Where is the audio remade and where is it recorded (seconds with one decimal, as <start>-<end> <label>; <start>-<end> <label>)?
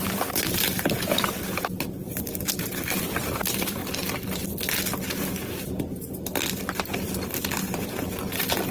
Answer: 0.0-3.8 remade; 3.8-7.6 recorded; 7.6-8.7 remade